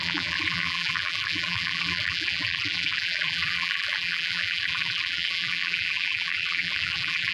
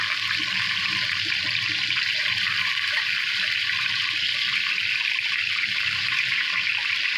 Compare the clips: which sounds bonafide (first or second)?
second